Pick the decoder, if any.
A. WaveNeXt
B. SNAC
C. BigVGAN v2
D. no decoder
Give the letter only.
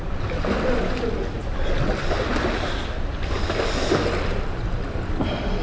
D